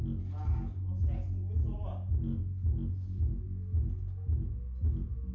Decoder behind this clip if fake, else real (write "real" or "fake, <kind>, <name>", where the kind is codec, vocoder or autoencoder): real